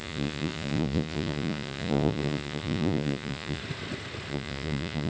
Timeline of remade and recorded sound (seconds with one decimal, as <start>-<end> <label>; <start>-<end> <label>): 0.0-3.6 remade; 3.6-4.3 recorded; 4.3-5.1 remade